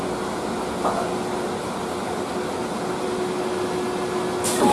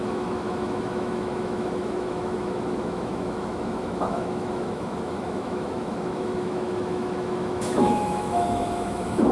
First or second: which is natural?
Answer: first